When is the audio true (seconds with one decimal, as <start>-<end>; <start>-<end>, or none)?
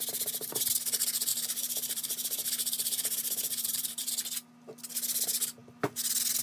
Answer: 0.0-1.3; 4.1-6.4